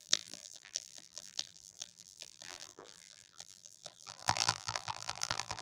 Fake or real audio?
fake